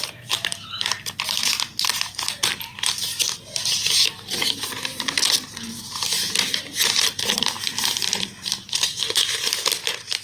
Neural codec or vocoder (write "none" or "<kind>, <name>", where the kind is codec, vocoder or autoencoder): none